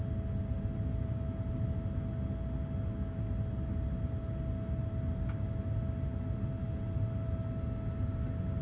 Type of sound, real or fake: real